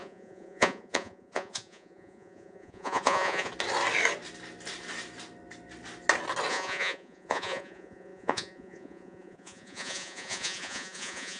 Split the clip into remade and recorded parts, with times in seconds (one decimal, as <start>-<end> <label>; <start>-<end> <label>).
0.0-3.5 remade; 3.5-6.5 recorded; 6.5-11.4 remade

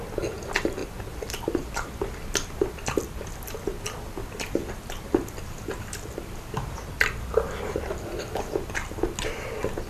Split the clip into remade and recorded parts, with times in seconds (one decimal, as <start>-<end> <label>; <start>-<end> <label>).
0.0-0.8 recorded; 0.8-4.7 remade; 4.7-9.9 recorded

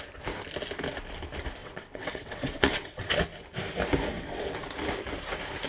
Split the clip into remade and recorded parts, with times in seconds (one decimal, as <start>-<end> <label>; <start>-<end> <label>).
0.0-1.6 recorded; 1.6-3.1 remade; 3.1-5.7 recorded

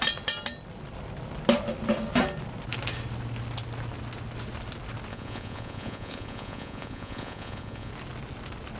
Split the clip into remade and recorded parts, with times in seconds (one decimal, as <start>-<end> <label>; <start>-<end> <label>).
0.0-5.1 recorded; 5.1-7.9 remade; 7.9-8.8 recorded

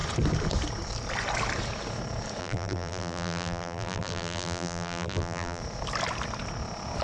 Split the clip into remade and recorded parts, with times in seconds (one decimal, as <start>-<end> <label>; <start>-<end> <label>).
0.0-2.4 recorded; 2.4-5.6 remade; 5.6-7.0 recorded